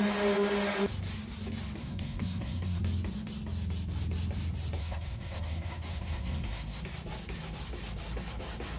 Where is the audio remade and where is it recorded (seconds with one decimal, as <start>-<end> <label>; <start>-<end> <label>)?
0.0-1.8 recorded; 1.8-2.8 remade; 2.8-4.8 recorded; 4.8-6.8 remade; 6.8-8.8 recorded